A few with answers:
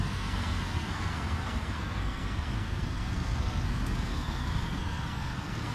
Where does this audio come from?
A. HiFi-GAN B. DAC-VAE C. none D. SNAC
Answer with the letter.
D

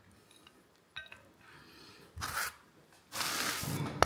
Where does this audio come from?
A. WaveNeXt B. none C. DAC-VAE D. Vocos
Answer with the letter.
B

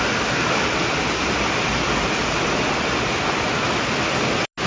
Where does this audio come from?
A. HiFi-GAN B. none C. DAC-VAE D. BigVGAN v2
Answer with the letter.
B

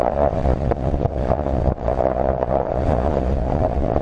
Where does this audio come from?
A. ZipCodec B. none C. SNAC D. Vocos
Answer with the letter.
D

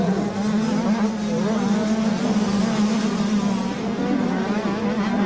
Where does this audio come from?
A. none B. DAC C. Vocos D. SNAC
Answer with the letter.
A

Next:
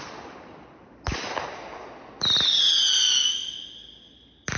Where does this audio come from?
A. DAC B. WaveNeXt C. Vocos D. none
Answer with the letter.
D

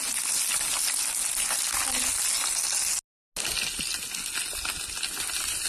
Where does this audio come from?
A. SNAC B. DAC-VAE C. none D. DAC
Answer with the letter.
C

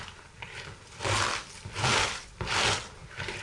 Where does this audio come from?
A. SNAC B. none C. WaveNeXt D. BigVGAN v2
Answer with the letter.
D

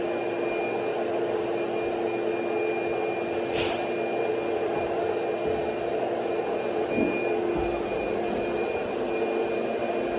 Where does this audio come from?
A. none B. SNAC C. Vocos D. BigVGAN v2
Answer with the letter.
A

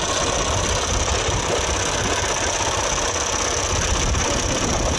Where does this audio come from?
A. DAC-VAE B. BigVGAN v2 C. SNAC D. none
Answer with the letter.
D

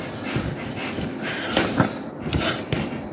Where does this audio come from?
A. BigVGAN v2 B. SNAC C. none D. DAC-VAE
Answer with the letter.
C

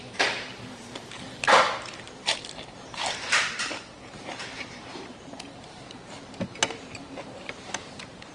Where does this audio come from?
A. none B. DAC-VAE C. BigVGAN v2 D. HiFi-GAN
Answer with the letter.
C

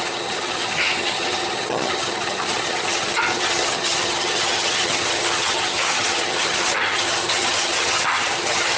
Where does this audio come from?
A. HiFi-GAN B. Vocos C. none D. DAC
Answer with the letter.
A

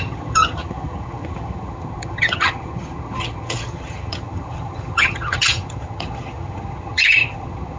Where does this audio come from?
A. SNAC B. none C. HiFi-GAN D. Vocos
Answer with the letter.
C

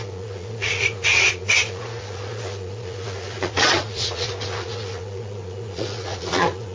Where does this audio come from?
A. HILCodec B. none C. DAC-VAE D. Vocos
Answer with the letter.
D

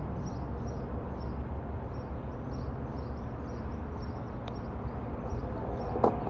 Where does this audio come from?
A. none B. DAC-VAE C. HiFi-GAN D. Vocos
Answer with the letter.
A